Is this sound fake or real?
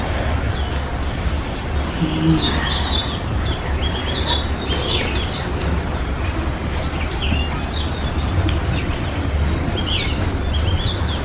real